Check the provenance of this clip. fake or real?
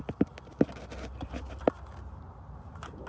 real